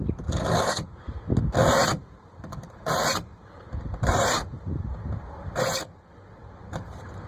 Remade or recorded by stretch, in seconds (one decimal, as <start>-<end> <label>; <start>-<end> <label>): 0.0-1.7 recorded; 1.7-5.8 remade; 5.8-6.4 recorded; 6.4-7.3 remade

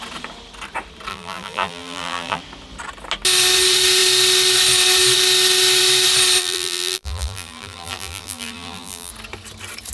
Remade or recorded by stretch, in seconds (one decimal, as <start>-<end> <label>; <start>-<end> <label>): 0.0-1.1 recorded; 1.1-2.4 remade; 2.4-6.4 recorded; 6.4-9.1 remade; 9.1-9.9 recorded

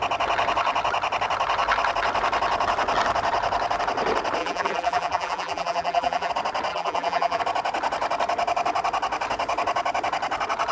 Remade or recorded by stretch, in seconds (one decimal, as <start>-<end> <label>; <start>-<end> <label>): 0.0-4.4 recorded; 4.4-6.3 remade; 6.3-6.7 recorded; 6.7-7.4 remade; 7.4-10.7 recorded

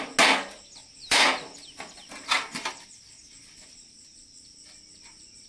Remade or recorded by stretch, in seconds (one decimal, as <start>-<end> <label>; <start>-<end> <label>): 0.0-0.8 recorded; 0.8-3.9 remade; 3.9-5.5 recorded

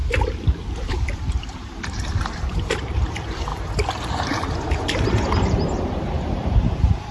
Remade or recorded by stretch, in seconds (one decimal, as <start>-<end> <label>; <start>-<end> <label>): 0.0-1.4 recorded; 1.4-7.1 remade

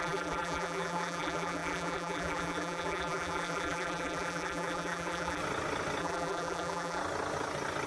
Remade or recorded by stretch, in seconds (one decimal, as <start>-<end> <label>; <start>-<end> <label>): 0.0-5.4 remade; 5.4-6.0 recorded; 6.0-7.0 remade; 7.0-7.9 recorded

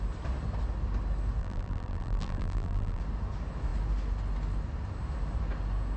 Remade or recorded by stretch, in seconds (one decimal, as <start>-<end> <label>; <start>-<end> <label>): 0.0-1.4 recorded; 1.4-3.0 remade; 3.0-6.0 recorded